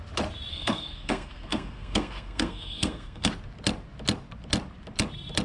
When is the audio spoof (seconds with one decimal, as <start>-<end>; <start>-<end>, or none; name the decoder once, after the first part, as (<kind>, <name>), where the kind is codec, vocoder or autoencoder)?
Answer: 0.5-3.3 (codec, SNAC)

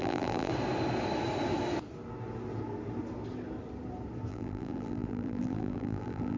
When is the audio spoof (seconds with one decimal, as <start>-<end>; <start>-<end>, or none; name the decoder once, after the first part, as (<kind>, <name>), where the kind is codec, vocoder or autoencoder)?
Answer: 0.0-0.5 (vocoder, BigVGAN v2); 4.3-6.4